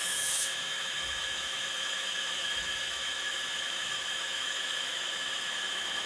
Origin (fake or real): fake